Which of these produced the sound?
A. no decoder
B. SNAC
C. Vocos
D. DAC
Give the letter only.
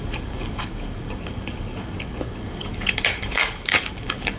D